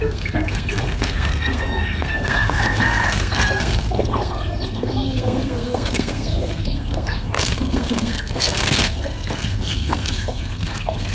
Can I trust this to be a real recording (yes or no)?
no